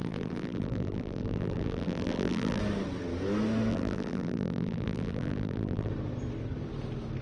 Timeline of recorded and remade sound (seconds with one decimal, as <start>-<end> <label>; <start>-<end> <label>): 0.0-2.6 remade; 2.6-3.7 recorded; 3.7-5.9 remade; 5.9-7.2 recorded